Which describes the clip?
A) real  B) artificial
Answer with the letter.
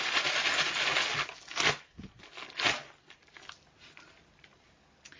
A